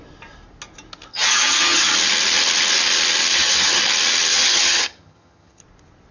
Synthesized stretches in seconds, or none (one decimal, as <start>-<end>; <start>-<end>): 1.1-1.9; 3.3-3.8; 4.3-5.6